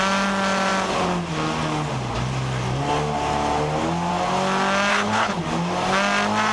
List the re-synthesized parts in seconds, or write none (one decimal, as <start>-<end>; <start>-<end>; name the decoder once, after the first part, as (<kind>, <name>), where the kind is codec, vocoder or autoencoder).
4.9-5.4 (codec, HILCodec)